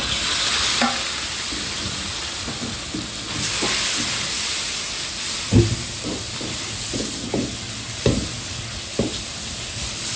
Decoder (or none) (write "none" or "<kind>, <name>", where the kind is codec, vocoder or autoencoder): none